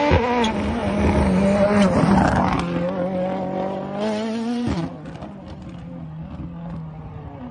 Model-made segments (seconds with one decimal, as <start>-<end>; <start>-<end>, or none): none